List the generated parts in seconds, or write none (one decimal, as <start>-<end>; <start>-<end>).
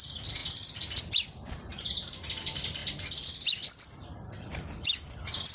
none